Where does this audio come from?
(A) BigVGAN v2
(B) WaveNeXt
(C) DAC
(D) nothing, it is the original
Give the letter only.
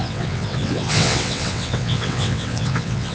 B